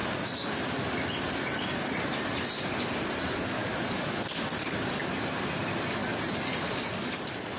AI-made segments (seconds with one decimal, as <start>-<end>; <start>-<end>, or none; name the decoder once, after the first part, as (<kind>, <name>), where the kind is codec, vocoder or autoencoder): 0.0-2.5 (vocoder, BigVGAN v2); 3.6-5.0; 6.0-6.6